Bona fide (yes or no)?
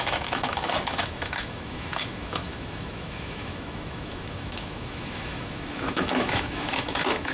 no